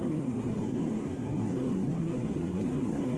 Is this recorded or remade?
remade